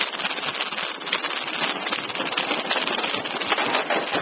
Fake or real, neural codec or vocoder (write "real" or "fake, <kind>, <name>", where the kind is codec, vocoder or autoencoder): real